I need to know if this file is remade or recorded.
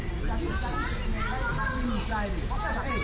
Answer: recorded